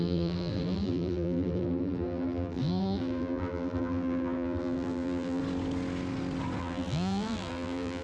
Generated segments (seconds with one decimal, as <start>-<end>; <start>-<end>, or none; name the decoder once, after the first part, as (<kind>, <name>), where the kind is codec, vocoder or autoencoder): 0.0-5.4 (vocoder, BigVGAN v2); 6.6-8.0